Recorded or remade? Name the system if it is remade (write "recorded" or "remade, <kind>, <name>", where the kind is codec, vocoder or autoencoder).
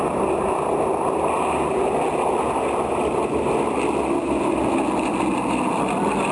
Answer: recorded